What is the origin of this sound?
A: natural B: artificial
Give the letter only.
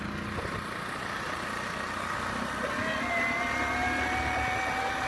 A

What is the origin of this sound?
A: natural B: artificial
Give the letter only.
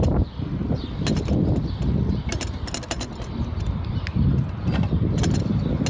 A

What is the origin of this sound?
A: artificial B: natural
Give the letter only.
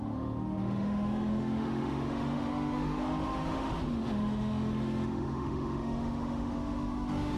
A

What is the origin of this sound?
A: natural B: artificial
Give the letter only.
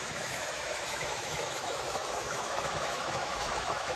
B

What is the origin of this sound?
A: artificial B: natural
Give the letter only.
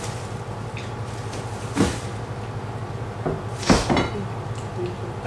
B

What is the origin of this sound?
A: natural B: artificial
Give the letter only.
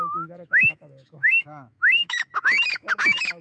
B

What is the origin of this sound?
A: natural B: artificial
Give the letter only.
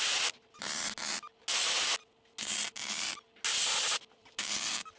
A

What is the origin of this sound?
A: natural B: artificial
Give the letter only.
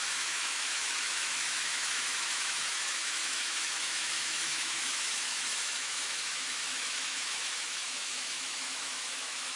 B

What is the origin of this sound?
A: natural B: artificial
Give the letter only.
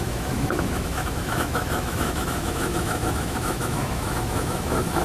B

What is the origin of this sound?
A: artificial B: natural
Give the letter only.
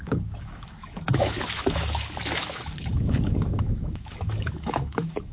A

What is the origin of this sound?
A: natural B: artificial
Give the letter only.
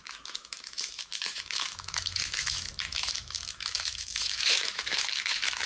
B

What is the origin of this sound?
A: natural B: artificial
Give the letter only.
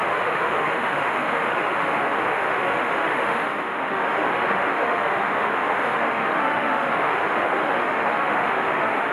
B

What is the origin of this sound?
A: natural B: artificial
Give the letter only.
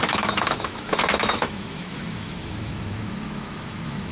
B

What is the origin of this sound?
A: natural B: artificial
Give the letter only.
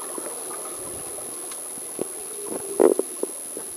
A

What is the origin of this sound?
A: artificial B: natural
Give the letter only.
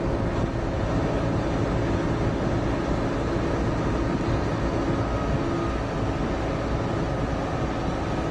B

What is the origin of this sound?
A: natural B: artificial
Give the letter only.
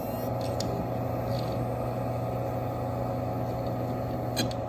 A